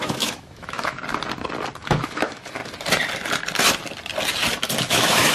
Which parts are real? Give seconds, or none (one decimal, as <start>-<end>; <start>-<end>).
1.0-1.8; 2.6-4.8